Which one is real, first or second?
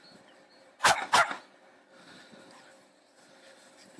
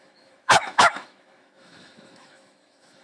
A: first